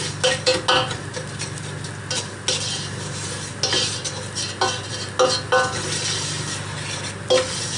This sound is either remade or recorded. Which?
recorded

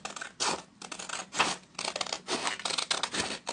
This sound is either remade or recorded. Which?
recorded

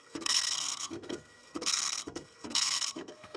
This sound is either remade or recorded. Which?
remade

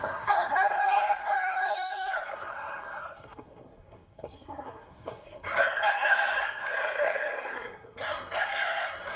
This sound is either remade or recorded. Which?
remade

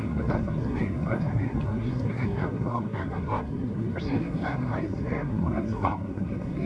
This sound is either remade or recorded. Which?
remade